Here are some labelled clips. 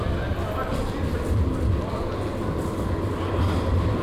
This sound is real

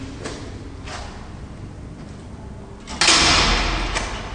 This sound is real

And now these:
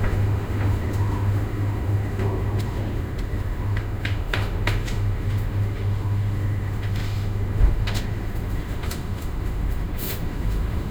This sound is fake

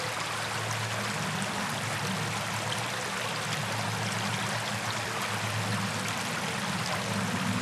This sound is real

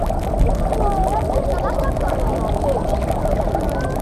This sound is real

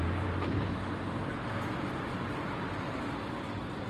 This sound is fake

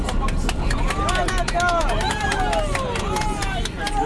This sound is real